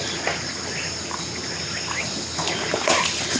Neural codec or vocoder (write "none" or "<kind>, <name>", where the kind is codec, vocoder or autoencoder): none